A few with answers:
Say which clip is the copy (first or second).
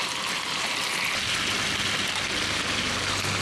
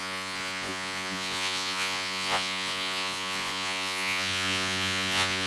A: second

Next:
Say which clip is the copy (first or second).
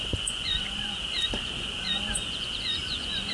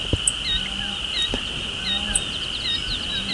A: first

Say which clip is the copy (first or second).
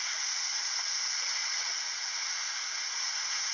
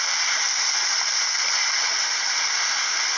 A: first